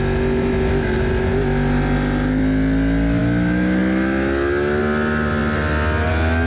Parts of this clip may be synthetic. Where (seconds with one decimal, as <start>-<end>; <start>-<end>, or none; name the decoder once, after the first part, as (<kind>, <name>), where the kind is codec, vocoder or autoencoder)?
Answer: none